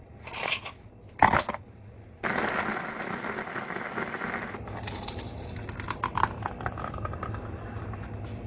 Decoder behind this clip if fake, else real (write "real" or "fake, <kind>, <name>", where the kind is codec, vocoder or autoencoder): real